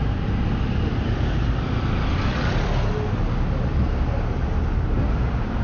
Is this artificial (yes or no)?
no